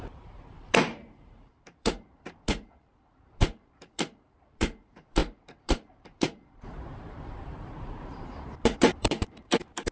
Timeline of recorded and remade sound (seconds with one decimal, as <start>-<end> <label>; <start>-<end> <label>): 0.0-9.9 remade